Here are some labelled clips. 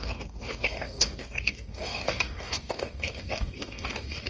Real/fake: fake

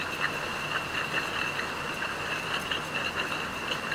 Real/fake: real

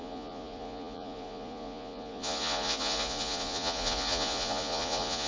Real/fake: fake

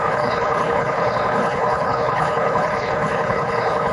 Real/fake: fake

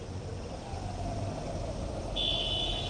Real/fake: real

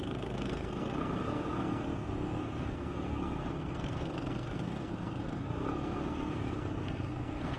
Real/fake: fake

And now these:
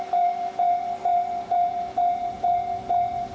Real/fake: real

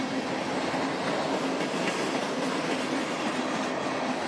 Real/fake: real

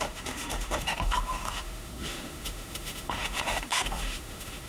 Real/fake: fake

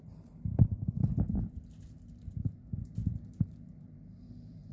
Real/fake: fake